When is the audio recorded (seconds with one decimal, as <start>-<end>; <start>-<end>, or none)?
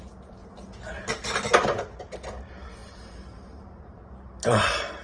0.4-1.1